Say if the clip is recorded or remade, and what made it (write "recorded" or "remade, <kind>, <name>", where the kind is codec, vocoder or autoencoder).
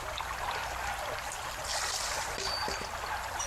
recorded